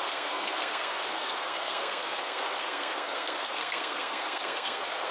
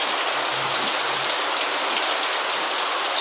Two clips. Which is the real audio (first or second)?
second